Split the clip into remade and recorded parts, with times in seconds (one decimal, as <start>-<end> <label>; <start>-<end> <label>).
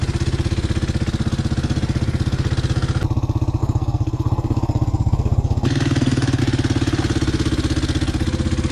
0.0-3.6 recorded; 3.6-6.4 remade; 6.4-8.7 recorded